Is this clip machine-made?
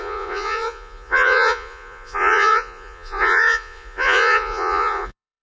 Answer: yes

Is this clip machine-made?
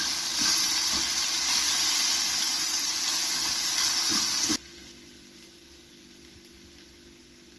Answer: no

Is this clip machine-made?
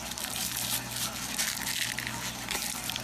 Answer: no